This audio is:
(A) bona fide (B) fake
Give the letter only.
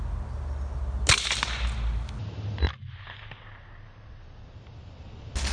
A